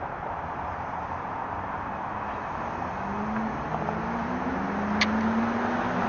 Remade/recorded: recorded